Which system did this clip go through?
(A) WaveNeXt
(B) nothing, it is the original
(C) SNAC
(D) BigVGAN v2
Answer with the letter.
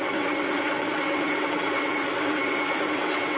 A